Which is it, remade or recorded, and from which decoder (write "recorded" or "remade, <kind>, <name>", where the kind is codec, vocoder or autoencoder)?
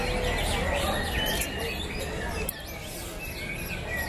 recorded